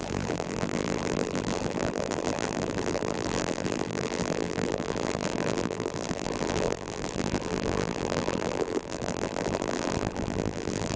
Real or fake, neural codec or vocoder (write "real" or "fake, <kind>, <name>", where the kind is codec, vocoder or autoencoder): fake, vocoder, BigVGAN v2